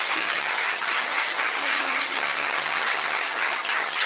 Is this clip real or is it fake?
fake